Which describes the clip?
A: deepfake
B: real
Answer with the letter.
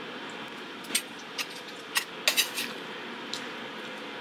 B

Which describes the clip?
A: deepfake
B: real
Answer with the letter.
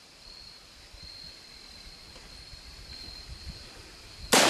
B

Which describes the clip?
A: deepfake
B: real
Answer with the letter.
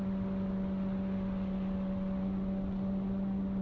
B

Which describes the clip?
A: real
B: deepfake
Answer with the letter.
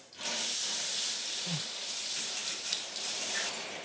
B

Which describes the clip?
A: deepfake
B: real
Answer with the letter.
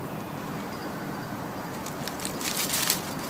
B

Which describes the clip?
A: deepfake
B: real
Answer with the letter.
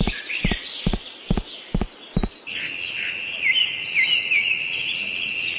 A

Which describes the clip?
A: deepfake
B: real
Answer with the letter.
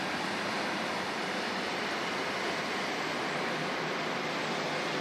A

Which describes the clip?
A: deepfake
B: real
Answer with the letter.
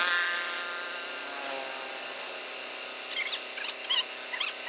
B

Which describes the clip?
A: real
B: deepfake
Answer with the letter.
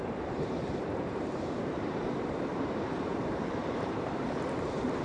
B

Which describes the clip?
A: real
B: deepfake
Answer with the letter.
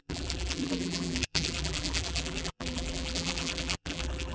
B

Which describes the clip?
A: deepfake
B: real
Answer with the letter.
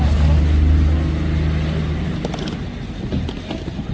B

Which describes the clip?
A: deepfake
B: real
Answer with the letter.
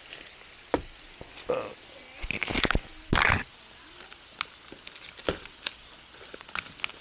B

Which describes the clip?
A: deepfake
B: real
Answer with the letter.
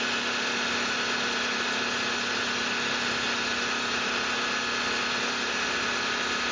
B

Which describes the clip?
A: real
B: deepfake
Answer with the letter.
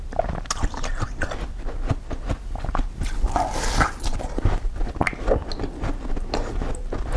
A